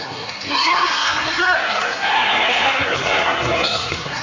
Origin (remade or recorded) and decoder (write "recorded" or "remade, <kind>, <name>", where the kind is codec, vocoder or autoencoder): remade, codec, SNAC